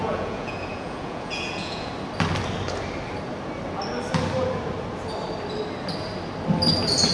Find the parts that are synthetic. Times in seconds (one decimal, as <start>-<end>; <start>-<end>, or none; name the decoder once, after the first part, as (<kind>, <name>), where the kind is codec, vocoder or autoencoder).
0.0-1.9 (vocoder, Vocos)

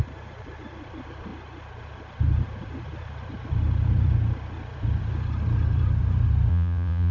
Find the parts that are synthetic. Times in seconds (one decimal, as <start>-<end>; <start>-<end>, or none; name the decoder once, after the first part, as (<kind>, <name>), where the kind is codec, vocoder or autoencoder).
6.5-7.1 (vocoder, Vocos)

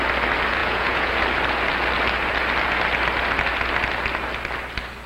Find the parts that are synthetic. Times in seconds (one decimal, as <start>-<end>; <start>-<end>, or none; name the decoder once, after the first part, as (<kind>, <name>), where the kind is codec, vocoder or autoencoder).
0.6-1.1 (vocoder, Vocos)

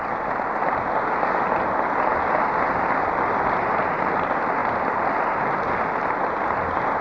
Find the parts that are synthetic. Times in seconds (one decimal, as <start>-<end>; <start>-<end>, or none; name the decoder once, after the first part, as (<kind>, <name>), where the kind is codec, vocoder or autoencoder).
none

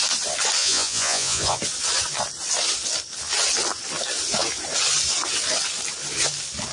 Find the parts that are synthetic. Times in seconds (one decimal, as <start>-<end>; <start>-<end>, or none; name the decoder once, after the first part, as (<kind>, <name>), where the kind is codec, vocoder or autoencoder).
0.6-1.6 (vocoder, Vocos)

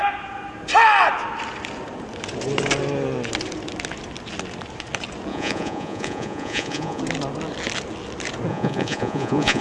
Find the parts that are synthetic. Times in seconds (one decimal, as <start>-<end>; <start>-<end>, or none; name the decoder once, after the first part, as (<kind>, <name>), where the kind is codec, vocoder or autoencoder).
5.3-7.0 (vocoder, Vocos); 8.5-9.6